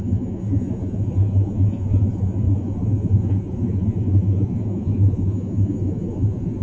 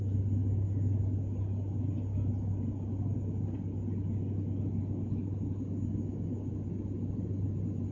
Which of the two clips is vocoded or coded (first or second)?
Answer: first